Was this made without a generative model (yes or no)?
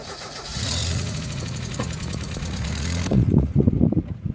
no